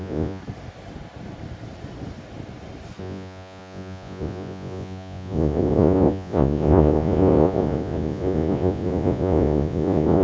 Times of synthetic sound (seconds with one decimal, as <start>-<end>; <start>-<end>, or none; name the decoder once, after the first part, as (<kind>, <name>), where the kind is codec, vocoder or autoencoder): 0.0-0.4 (vocoder, Vocos); 3.0-10.2